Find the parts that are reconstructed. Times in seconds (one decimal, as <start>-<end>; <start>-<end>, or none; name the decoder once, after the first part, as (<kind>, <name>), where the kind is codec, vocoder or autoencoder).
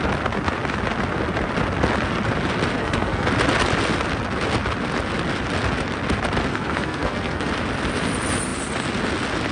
2.8-3.3 (codec, SNAC); 6.5-7.5